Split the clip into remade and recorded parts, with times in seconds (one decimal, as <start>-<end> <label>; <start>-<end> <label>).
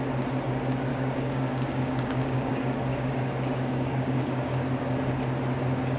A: 0.0-0.9 recorded; 0.9-2.5 remade; 2.5-2.9 recorded; 2.9-4.7 remade; 4.7-6.0 recorded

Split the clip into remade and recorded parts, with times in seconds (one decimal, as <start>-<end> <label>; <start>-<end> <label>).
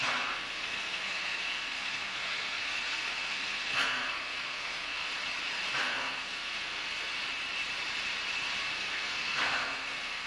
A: 0.0-5.1 remade; 5.1-5.8 recorded; 5.8-7.1 remade; 7.1-8.6 recorded; 8.6-10.3 remade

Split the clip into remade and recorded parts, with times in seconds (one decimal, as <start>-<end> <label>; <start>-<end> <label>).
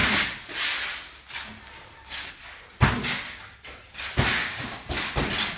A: 0.0-4.4 recorded; 4.4-5.0 remade; 5.0-5.6 recorded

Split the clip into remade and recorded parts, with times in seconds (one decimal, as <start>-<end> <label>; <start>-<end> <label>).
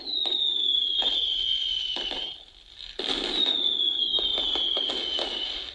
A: 0.0-5.7 recorded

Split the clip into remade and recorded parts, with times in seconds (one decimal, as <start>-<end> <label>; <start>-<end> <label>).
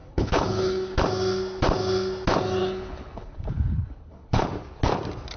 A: 0.0-1.0 remade; 1.0-2.6 recorded; 2.6-4.5 remade; 4.5-5.4 recorded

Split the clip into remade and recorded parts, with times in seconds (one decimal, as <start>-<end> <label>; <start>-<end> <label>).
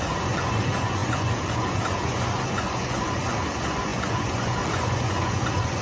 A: 0.0-5.8 remade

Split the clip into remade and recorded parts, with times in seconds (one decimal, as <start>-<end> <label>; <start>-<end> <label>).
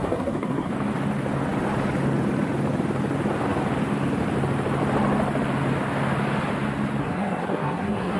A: 0.0-0.7 remade; 0.7-7.0 recorded; 7.0-8.2 remade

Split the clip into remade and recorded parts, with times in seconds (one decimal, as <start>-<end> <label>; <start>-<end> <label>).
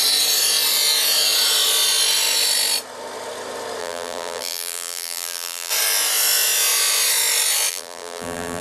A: 0.0-3.8 recorded; 3.8-5.7 remade; 5.7-7.7 recorded; 7.7-8.6 remade